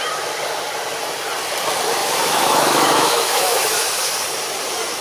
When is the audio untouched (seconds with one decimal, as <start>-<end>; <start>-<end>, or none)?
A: 0.0-2.0; 4.1-5.0